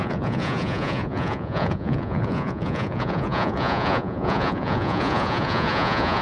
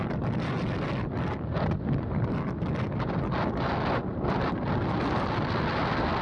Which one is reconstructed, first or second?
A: first